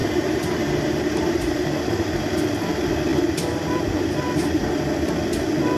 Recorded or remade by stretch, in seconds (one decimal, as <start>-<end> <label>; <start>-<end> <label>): 0.0-2.1 remade; 2.1-3.1 recorded; 3.1-5.0 remade; 5.0-5.8 recorded